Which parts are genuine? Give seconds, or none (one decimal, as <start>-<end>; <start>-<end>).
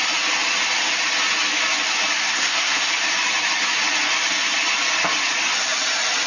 0.0-2.2; 2.9-6.3